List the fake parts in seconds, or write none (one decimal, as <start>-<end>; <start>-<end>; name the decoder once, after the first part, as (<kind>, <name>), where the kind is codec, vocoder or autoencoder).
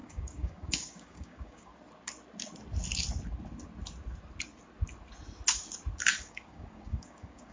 0.0-1.7 (codec, DAC); 6.2-7.5